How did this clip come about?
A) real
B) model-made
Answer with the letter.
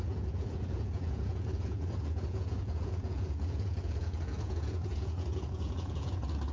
B